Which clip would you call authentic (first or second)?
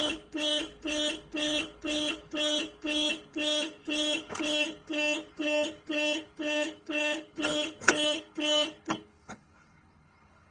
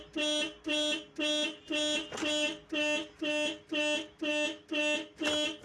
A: second